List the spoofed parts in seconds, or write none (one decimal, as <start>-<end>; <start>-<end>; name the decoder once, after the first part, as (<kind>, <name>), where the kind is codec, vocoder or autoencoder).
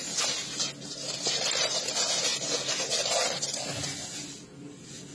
none